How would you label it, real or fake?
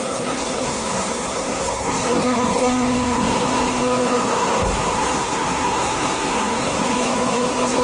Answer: fake